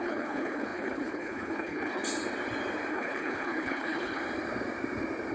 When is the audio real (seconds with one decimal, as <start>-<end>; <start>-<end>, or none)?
2.0-2.9; 4.2-5.3